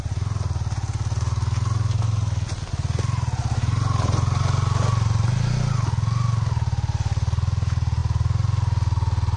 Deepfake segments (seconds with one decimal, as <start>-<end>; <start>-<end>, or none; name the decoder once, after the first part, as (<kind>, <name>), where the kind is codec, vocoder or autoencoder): none